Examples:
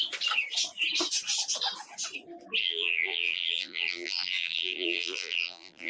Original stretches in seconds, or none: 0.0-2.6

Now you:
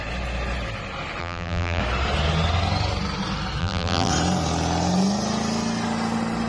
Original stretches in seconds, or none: 0.0-1.2; 1.8-3.6; 4.1-6.5

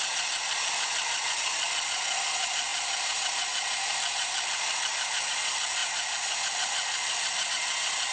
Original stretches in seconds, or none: 0.0-2.7; 5.3-8.1

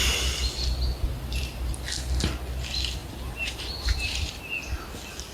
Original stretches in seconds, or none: 0.0-1.1; 1.7-3.0; 4.4-5.3

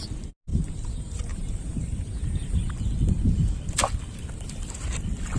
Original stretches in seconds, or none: 0.0-0.5; 2.7-5.4

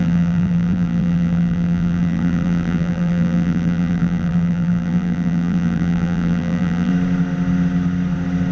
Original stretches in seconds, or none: 6.9-8.5

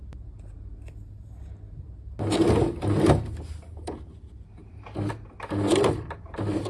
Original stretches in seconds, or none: 0.0-6.7

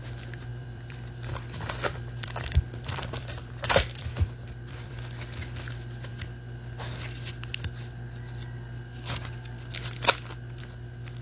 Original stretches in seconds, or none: 0.0-0.5; 4.9-11.2